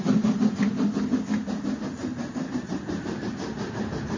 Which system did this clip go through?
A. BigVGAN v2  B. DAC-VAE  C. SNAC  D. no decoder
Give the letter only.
D